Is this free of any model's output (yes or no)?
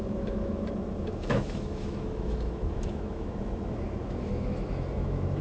no